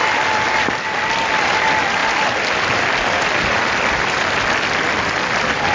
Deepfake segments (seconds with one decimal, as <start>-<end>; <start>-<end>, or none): none